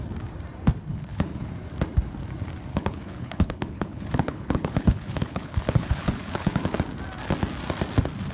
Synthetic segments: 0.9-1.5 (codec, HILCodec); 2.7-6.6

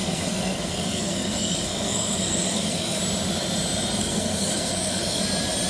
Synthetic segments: 0.0-3.0 (codec, SNAC); 4.0-5.2

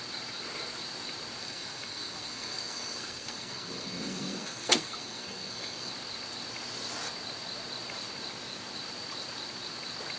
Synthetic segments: 1.4-5.9 (codec, SNAC)

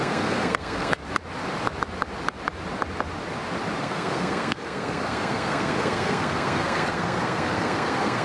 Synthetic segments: 0.0-1.0 (codec, SNAC); 3.8-8.2

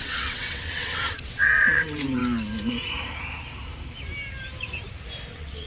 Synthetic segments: 0.0-2.2 (vocoder, WaveNeXt); 5.3-5.7